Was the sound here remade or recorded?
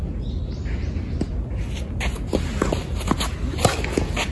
recorded